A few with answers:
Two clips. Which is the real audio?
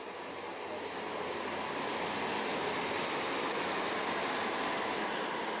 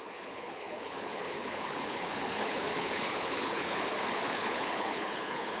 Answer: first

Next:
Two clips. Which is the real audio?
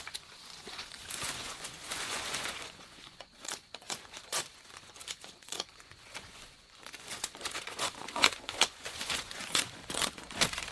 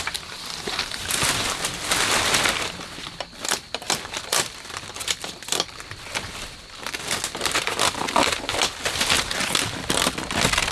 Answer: second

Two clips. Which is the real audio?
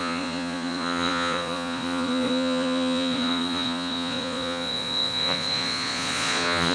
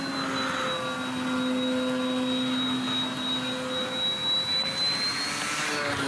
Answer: second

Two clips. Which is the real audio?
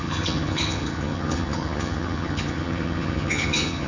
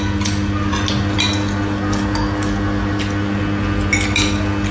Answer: second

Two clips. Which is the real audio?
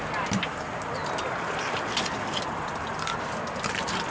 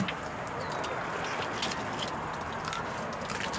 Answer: second